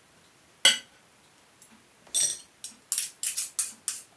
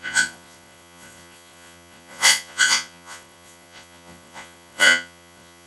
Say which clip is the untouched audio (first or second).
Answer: first